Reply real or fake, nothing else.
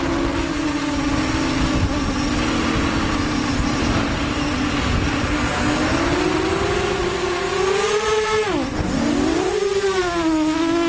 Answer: real